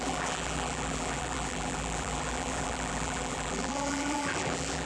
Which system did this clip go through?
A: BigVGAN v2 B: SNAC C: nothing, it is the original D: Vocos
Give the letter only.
A